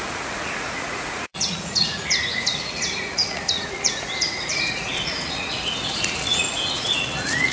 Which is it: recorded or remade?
remade